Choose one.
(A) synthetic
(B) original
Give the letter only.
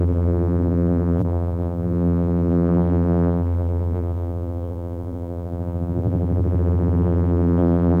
A